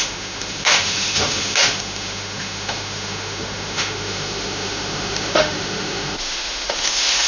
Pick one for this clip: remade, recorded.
remade